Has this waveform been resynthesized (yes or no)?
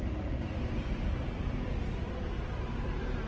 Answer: yes